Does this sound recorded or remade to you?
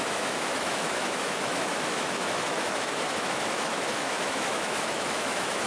remade